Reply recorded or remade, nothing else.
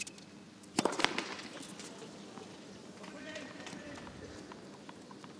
recorded